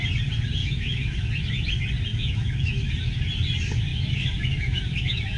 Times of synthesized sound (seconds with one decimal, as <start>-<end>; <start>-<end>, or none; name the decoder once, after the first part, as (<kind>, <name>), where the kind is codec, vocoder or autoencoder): 0.6-1.3 (autoencoder, DAC-VAE); 2.1-2.9; 3.9-5.4